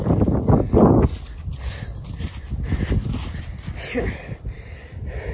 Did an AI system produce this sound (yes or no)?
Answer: no